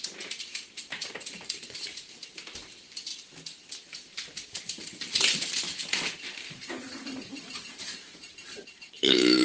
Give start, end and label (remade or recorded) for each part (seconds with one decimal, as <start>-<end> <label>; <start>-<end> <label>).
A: 0.0-3.1 remade; 3.1-4.6 recorded; 4.6-9.4 remade